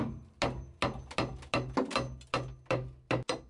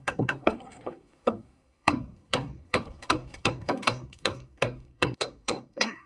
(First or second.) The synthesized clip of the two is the second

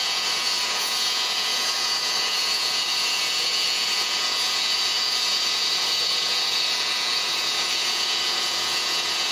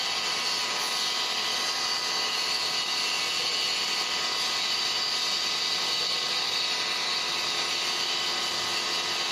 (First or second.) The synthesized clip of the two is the first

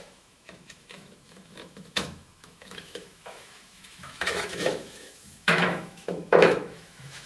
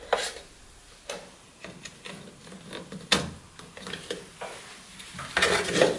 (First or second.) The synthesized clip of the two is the first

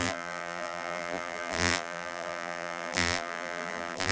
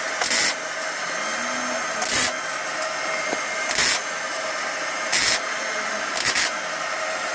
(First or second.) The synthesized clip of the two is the first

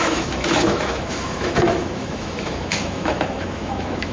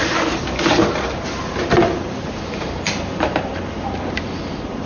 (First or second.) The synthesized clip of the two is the first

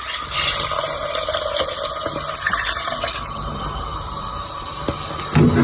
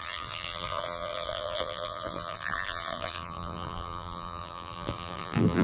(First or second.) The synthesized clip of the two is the second